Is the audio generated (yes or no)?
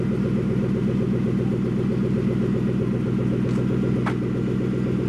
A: no